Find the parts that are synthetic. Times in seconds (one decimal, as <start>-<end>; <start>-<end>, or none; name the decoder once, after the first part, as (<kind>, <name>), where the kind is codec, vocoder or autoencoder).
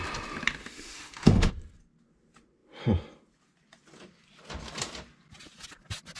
0.6-1.5 (autoencoder, DAC-VAE)